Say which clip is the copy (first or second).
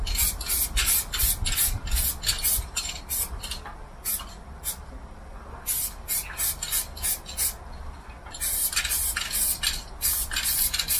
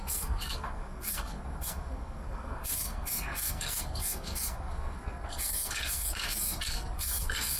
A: second